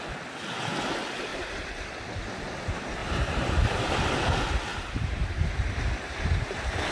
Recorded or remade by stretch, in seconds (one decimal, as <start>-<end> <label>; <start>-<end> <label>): 0.0-1.3 recorded; 1.3-2.0 remade; 2.0-3.0 recorded; 3.0-3.9 remade; 3.9-4.7 recorded; 4.7-6.4 remade; 6.4-6.9 recorded